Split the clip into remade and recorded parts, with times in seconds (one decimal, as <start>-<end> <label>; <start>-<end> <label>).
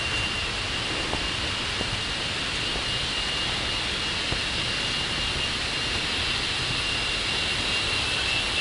0.0-8.6 recorded